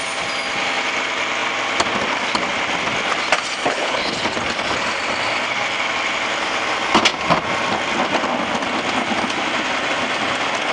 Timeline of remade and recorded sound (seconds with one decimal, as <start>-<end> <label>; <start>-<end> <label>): 0.0-3.6 recorded; 3.6-4.1 remade; 4.1-10.7 recorded